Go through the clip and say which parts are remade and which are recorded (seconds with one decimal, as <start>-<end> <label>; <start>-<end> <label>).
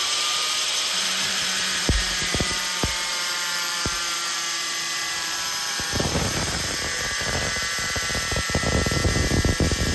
0.0-9.9 remade